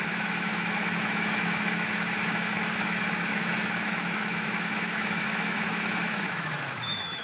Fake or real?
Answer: fake